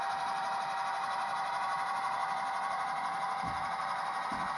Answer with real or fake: fake